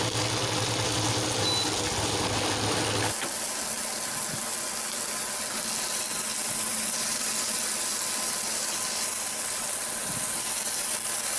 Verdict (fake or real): real